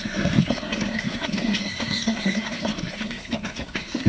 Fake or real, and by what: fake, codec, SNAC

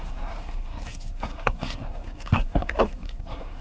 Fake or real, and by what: fake, codec, SNAC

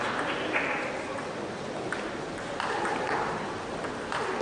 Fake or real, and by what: real